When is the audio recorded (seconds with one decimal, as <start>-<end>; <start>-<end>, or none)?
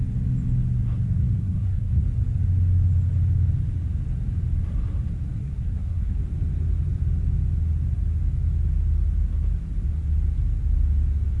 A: 0.0-1.2; 2.1-5.4; 6.2-11.4